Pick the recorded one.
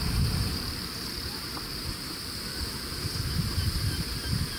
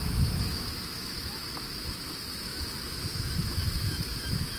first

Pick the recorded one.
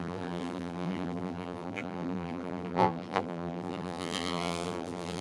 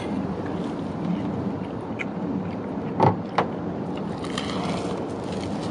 second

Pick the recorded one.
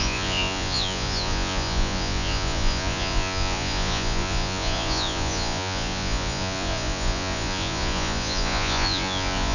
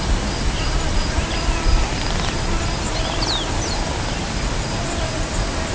second